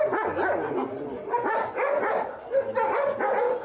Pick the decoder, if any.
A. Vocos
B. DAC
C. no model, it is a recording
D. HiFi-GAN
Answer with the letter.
C